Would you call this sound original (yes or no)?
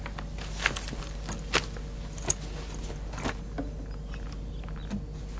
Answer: yes